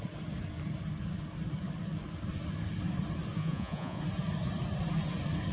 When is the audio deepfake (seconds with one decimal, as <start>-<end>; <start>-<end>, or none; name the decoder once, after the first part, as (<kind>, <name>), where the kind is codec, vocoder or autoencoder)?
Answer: 3.4-4.0 (vocoder, Vocos)